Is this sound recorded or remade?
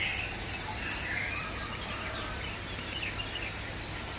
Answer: recorded